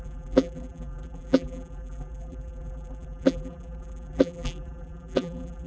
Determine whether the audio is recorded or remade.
remade